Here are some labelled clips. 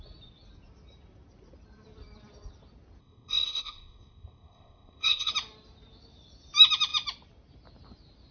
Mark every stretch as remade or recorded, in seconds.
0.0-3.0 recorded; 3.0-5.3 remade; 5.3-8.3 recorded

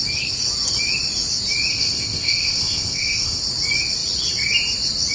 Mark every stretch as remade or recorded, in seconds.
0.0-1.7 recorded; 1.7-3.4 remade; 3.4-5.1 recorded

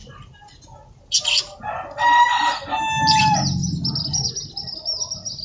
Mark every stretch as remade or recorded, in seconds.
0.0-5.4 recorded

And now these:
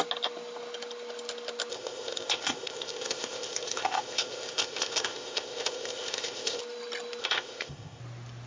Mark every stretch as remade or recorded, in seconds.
0.0-1.7 recorded; 1.7-6.6 remade; 6.6-7.2 recorded; 7.2-8.0 remade; 8.0-8.5 recorded